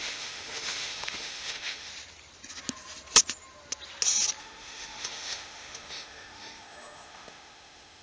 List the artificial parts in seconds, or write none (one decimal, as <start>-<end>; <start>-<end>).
0.0-1.9; 4.4-8.0